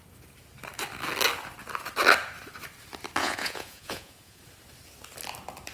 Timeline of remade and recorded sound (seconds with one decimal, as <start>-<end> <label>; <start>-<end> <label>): 0.0-3.2 recorded; 3.2-4.4 remade; 4.4-5.7 recorded